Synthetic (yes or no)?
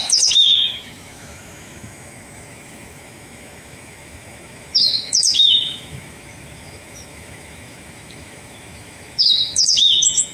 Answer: yes